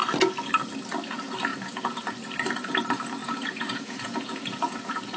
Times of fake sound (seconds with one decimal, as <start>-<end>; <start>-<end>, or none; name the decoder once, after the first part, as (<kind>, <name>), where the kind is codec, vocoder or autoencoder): 1.5-2.0 (vocoder, Vocos); 3.2-5.2